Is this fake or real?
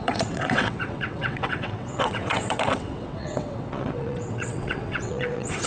fake